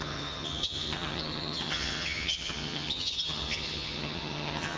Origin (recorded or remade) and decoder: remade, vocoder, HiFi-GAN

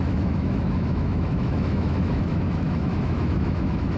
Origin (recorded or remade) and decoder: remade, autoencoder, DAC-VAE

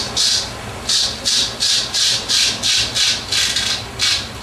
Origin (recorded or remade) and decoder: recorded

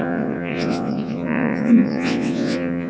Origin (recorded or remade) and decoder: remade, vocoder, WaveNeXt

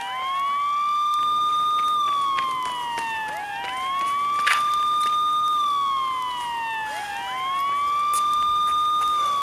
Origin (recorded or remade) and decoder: recorded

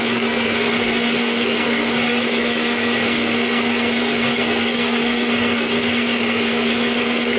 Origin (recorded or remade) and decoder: remade, codec, SNAC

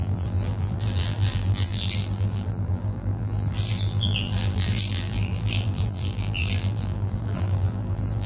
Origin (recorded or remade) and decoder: remade, vocoder, BigVGAN v2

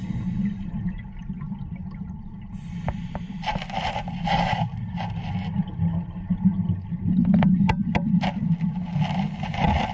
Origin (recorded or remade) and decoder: recorded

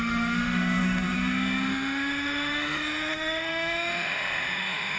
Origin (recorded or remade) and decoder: remade, autoencoder, DAC-VAE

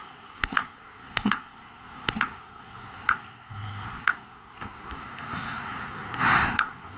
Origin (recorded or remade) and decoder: remade, codec, SNAC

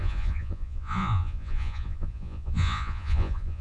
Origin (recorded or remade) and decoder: remade, vocoder, Vocos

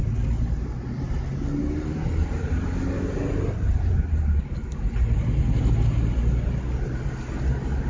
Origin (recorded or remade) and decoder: recorded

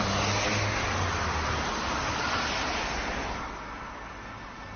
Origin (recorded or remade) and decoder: recorded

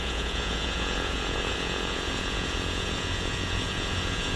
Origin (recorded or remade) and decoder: remade, vocoder, Vocos